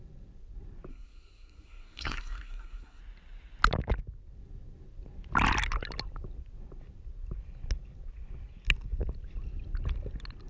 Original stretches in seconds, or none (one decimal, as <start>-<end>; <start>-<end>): 0.0-0.9; 3.0-10.5